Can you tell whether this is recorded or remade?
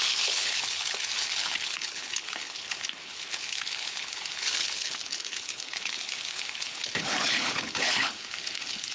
remade